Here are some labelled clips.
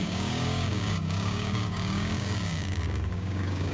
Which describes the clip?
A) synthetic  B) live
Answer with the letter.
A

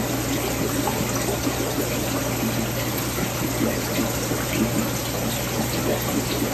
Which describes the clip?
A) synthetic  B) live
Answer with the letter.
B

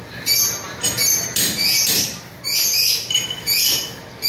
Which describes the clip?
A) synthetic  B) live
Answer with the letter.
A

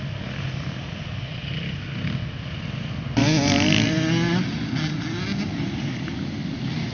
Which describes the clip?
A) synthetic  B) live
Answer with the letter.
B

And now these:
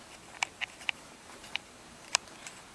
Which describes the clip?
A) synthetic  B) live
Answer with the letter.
A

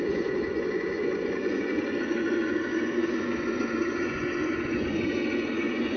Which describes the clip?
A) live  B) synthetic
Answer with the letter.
B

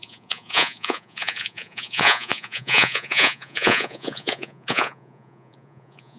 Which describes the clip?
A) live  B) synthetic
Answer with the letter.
B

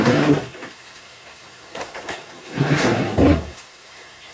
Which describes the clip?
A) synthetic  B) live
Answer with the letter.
A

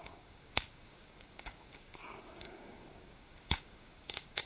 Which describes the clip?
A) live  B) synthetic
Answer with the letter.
B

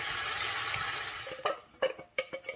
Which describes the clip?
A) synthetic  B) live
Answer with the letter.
B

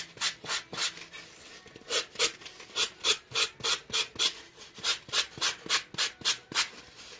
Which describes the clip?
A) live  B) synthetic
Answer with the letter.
A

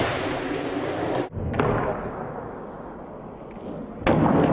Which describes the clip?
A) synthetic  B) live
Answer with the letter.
B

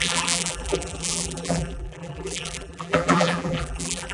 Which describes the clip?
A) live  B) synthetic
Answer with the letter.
B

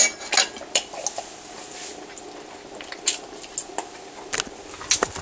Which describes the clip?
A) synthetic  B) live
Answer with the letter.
B